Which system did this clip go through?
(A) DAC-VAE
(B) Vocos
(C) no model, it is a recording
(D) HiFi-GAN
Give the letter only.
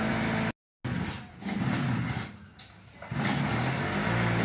C